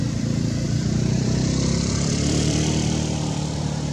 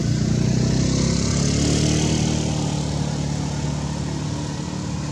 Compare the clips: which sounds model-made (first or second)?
first